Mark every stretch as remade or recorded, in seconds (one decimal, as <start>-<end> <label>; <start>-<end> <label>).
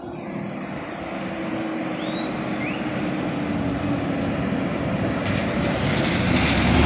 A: 0.0-6.9 recorded